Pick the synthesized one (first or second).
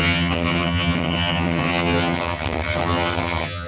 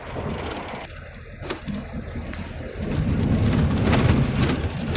first